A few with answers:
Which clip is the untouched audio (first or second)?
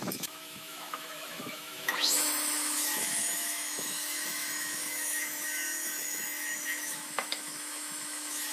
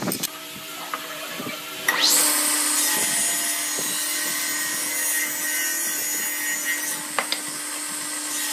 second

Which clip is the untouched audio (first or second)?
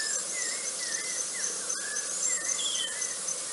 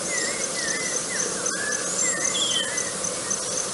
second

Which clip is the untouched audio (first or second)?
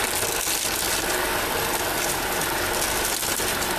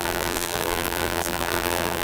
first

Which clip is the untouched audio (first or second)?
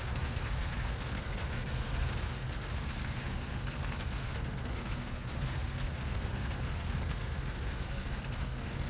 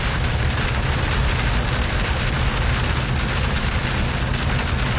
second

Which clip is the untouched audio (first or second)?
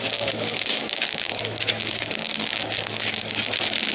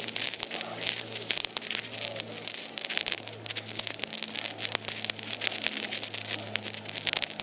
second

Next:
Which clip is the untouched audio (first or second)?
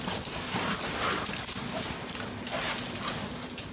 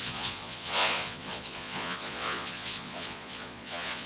first